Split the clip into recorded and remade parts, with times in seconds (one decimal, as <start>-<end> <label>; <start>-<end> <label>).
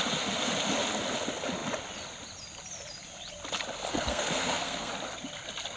0.0-3.9 recorded; 3.9-4.9 remade; 4.9-5.8 recorded